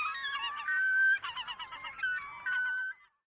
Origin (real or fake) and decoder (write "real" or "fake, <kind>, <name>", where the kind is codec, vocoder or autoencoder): real